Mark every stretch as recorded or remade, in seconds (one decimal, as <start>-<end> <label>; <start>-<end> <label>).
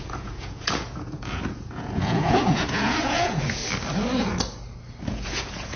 0.0-3.6 remade; 3.6-5.1 recorded; 5.1-5.8 remade